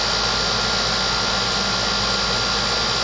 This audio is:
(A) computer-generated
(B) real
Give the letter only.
B